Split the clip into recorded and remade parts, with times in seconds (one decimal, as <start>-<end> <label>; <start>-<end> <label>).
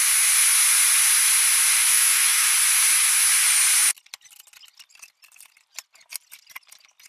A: 0.0-1.9 recorded; 1.9-2.5 remade; 2.5-7.1 recorded